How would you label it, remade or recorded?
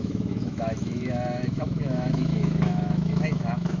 remade